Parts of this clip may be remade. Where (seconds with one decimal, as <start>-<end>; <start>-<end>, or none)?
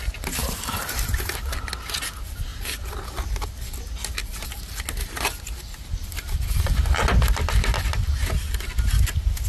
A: 0.4-1.4; 6.0-7.0